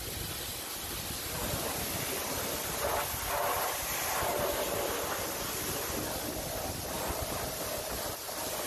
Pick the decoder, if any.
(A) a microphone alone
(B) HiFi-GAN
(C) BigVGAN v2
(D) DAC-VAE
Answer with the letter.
A